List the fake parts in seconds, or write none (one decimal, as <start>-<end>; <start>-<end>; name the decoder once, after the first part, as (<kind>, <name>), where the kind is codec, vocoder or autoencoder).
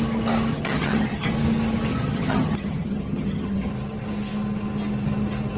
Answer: 0.5-1.3 (vocoder, HiFi-GAN); 1.9-3.7